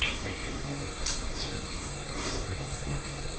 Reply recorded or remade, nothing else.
remade